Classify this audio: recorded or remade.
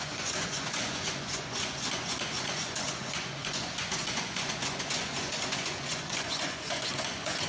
remade